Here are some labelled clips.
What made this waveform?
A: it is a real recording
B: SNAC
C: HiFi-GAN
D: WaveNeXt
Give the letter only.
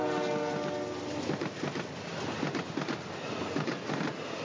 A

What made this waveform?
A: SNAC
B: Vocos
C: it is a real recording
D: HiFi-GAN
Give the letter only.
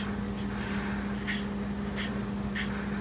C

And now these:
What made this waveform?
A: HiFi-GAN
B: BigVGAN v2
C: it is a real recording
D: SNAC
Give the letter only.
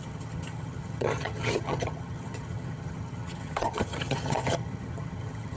A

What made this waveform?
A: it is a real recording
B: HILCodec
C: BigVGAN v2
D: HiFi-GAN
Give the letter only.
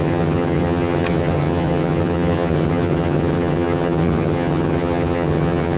D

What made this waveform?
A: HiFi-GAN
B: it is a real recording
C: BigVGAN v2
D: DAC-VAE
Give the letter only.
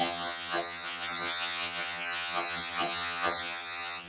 A